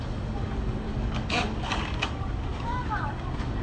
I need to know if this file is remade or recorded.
remade